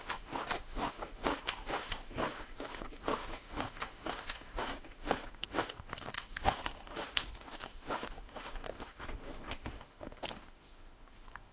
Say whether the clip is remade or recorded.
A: remade